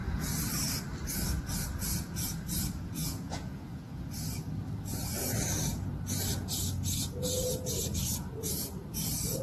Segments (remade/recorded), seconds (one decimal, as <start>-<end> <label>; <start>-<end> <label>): 0.0-3.0 recorded; 3.0-4.0 remade; 4.0-9.4 recorded

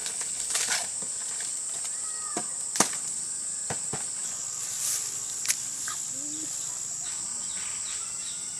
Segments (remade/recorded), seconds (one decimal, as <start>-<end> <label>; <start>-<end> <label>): 0.0-0.7 remade; 0.7-8.6 recorded

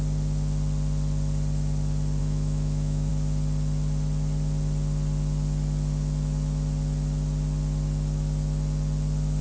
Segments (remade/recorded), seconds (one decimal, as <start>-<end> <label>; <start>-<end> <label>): 0.0-2.2 recorded; 2.2-3.1 remade; 3.1-9.4 recorded

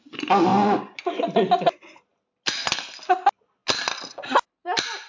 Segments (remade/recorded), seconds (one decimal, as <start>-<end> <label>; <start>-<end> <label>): 0.0-5.1 recorded

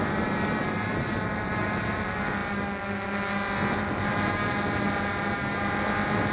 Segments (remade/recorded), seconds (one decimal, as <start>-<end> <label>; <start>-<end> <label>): 0.0-6.3 recorded

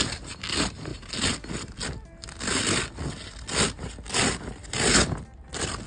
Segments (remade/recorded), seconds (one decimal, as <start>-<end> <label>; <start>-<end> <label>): 0.0-5.9 recorded